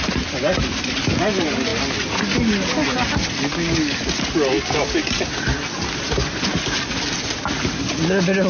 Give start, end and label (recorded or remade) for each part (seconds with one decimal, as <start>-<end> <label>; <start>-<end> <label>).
0.0-8.5 recorded